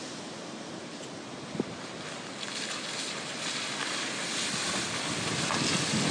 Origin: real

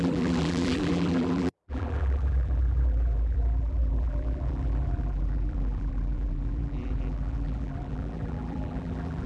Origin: fake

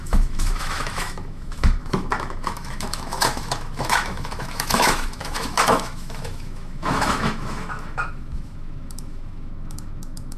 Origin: fake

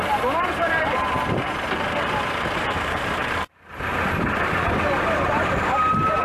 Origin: fake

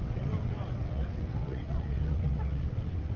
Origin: fake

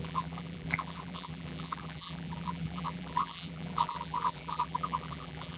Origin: fake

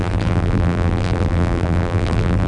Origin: fake